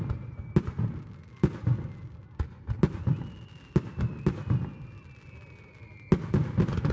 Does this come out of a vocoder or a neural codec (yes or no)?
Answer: no